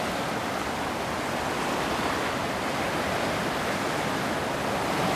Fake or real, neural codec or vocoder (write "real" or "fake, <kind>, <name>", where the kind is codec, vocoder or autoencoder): real